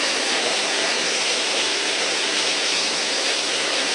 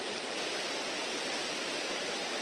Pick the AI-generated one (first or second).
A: first